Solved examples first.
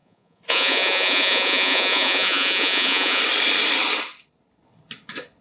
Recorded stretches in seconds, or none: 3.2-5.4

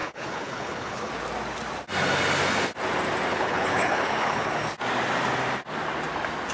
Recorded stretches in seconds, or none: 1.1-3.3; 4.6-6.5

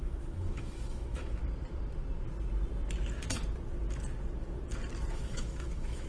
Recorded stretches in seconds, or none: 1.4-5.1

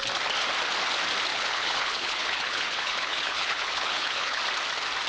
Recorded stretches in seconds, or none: 0.0-1.3; 4.4-5.1